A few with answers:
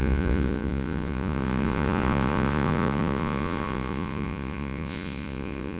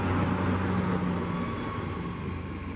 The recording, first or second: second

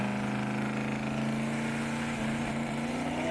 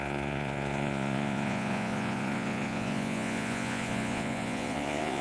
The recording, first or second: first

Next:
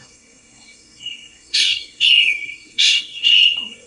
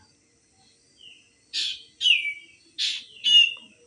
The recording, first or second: second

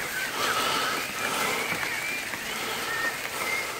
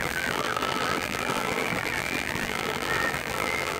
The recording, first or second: first